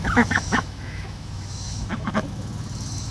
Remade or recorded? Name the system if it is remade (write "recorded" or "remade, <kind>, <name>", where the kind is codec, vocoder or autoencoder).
remade, autoencoder, DAC-VAE